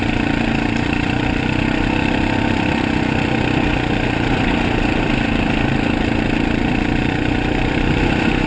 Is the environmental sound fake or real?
real